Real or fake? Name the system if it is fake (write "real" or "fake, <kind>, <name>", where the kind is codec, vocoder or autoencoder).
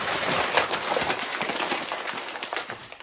fake, vocoder, BigVGAN v2